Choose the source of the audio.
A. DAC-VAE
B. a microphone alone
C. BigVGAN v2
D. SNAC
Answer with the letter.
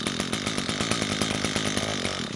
B